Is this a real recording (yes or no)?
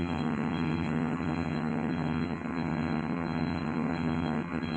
no